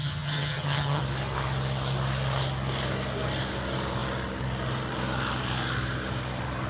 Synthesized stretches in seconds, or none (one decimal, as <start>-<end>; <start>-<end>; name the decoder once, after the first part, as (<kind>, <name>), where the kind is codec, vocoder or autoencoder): 0.0-1.0 (vocoder, HiFi-GAN)

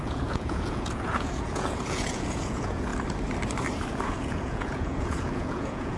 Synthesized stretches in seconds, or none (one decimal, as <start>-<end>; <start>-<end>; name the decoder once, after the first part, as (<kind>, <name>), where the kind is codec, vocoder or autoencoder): 0.0-2.9 (vocoder, Vocos); 3.9-6.0